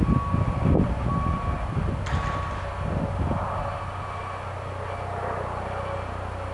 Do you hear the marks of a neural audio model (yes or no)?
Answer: no